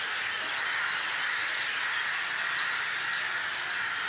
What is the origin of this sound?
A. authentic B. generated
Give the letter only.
A